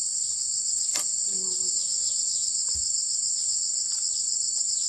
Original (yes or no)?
yes